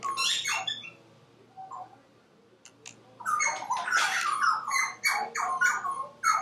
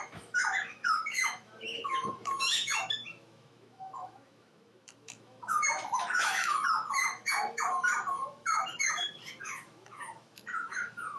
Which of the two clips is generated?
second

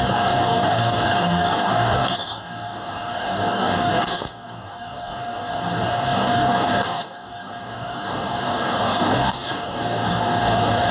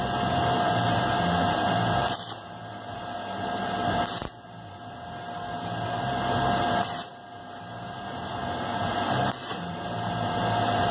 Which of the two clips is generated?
first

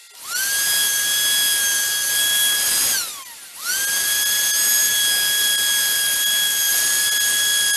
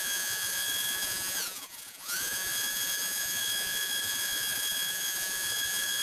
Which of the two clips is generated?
second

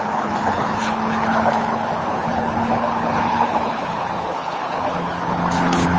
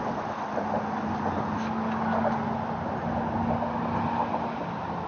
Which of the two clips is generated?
first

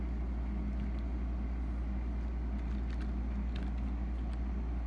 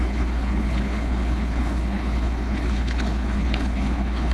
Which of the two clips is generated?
second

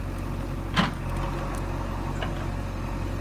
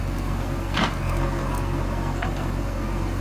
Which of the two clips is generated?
second